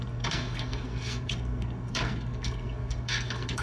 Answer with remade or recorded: remade